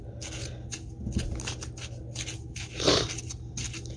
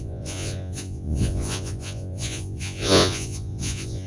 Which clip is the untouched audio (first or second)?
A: first